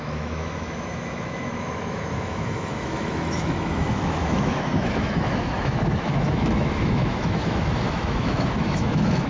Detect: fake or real fake